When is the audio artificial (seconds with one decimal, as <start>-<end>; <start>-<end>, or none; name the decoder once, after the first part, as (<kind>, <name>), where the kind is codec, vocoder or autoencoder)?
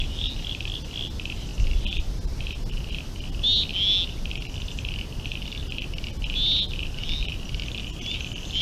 none